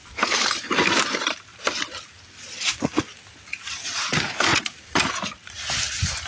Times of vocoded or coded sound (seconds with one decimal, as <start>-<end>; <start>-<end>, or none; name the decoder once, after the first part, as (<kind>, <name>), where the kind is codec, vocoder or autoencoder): 0.0-1.5 (vocoder, BigVGAN v2); 3.7-6.3